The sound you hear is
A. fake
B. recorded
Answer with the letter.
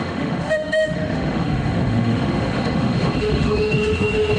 A